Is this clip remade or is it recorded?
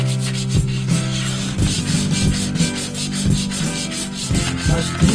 recorded